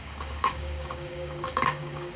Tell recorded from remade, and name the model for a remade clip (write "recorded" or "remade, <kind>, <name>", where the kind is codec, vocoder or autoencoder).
remade, codec, DAC